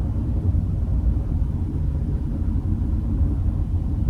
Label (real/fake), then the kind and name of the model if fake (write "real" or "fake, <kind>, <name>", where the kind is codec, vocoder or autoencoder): fake, vocoder, BigVGAN v2